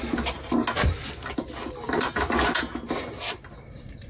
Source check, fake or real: real